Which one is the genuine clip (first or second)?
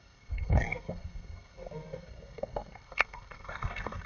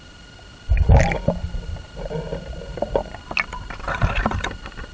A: second